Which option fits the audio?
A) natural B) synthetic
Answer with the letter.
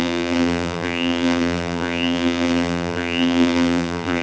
B